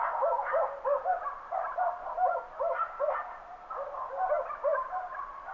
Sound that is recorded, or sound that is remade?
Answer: recorded